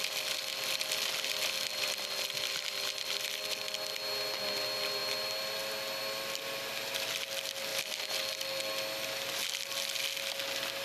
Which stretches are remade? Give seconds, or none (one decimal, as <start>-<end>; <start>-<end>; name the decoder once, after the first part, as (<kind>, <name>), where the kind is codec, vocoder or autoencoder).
none